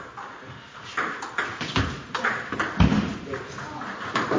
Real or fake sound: real